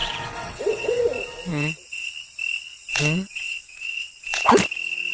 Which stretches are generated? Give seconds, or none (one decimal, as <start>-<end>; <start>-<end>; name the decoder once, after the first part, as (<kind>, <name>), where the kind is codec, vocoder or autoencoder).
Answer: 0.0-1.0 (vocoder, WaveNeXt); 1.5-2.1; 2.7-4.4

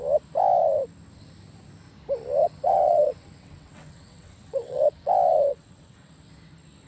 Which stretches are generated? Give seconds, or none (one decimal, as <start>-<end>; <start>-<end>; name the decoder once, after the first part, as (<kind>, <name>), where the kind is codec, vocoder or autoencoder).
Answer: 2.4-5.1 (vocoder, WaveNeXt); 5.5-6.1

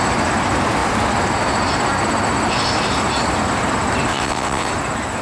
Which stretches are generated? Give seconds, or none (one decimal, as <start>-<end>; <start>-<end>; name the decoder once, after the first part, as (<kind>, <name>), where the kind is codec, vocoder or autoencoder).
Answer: 4.1-4.7 (vocoder, WaveNeXt)

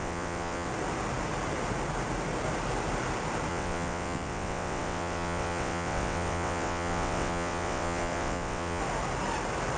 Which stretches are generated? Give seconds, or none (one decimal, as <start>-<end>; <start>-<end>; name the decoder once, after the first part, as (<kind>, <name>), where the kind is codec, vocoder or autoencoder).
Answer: 0.0-0.7 (vocoder, WaveNeXt); 3.5-8.8

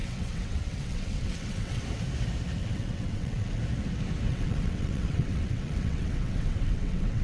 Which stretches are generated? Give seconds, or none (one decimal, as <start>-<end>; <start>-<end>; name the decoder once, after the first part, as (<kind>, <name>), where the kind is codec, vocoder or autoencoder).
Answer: 0.0-1.8 (vocoder, WaveNeXt); 2.6-3.6; 4.3-7.2

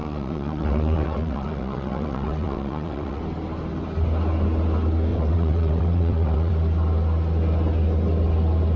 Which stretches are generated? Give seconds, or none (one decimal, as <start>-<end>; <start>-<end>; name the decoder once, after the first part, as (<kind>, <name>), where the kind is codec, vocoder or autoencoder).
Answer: 0.0-3.2 (vocoder, WaveNeXt); 5.1-6.5

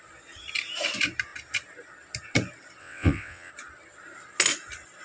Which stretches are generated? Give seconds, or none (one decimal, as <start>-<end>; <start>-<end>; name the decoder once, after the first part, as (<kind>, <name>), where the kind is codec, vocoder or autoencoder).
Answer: 2.8-3.5 (vocoder, WaveNeXt)

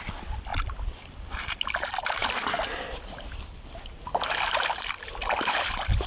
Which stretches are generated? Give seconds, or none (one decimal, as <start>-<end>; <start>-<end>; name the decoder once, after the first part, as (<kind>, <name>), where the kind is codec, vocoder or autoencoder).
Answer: none